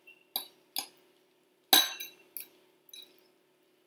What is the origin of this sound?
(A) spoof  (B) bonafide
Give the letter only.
B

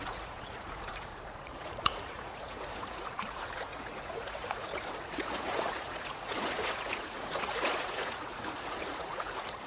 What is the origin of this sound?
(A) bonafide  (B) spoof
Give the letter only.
B